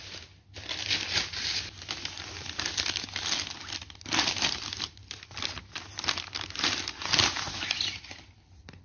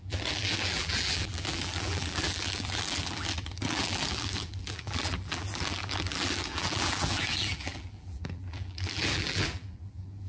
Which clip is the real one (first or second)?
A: first